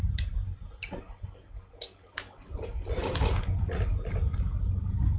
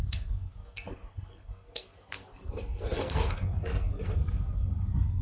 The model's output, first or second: second